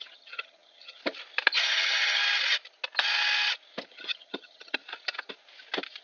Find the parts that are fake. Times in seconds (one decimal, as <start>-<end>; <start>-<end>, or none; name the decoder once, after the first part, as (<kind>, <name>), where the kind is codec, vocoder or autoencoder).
0.0-1.0 (vocoder, HiFi-GAN); 1.6-2.2; 3.9-4.8